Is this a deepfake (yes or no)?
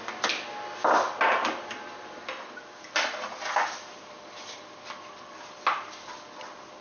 no